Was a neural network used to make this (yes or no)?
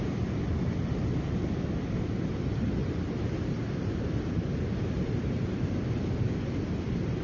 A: yes